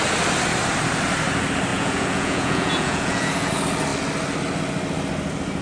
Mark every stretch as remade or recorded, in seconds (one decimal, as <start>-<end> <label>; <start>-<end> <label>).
0.0-1.7 recorded; 1.7-3.5 remade; 3.5-5.6 recorded